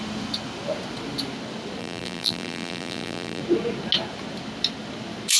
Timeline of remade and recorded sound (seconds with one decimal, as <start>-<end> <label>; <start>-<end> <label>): 0.0-1.8 recorded; 1.8-3.4 remade; 3.4-5.4 recorded